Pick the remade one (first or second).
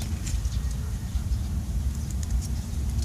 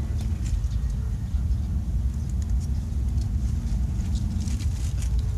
first